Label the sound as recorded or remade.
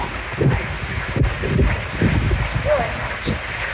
recorded